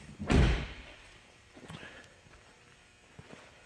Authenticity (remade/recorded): remade